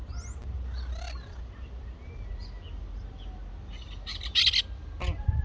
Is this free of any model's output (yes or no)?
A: yes